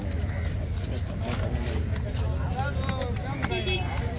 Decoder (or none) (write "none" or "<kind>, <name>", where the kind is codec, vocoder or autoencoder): none